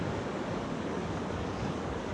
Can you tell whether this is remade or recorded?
remade